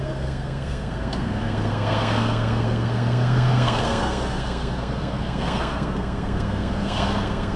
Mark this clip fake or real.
fake